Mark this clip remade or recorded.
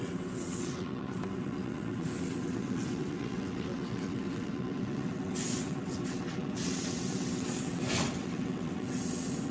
remade